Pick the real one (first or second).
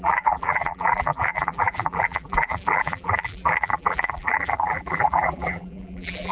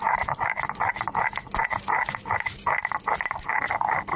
second